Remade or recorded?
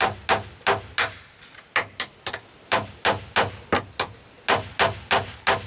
recorded